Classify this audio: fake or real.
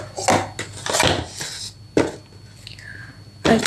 real